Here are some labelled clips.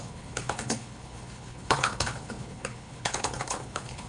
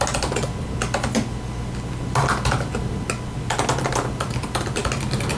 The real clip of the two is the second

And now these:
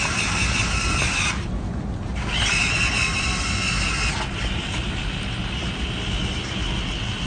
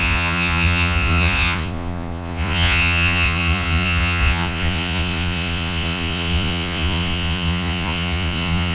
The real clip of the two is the first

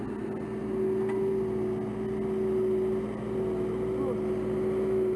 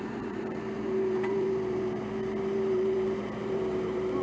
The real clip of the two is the first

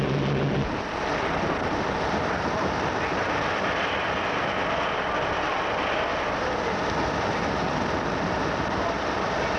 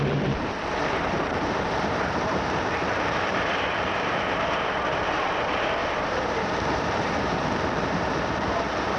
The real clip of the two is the first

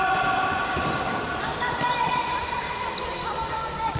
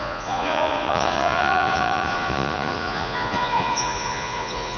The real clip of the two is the first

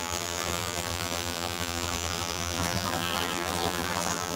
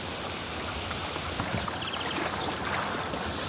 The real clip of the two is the second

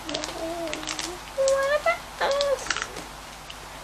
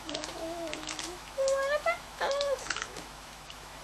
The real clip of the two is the first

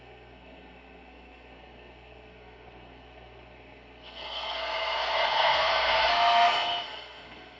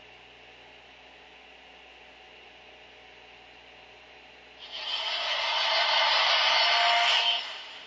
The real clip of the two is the second